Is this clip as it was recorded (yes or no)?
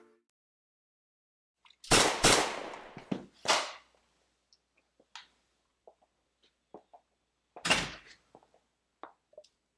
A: yes